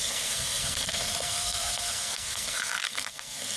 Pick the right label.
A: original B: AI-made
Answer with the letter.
B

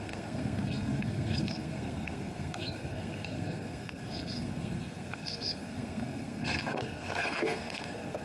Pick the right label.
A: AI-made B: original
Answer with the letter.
A